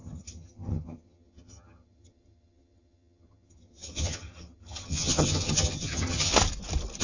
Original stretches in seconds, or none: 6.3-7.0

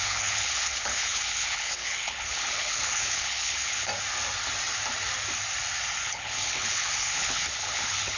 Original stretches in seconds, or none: 3.9-6.0

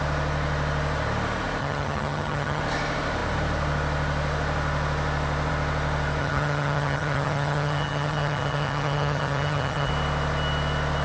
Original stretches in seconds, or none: 0.0-1.6; 2.6-6.2; 9.9-11.0

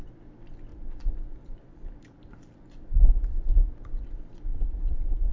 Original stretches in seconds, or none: 0.0-0.7; 3.5-4.5

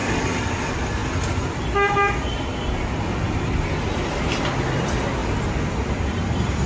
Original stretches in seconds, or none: 1.0-4.8; 5.2-5.7

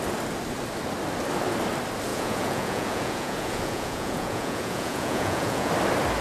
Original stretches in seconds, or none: 0.0-2.1; 5.7-6.2